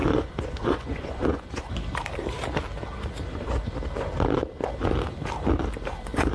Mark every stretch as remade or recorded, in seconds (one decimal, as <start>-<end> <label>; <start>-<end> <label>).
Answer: 0.0-1.7 remade; 1.7-6.3 recorded